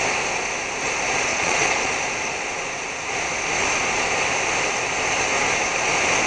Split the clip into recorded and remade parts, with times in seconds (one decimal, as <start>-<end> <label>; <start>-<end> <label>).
0.0-1.3 recorded; 1.3-1.9 remade; 1.9-6.3 recorded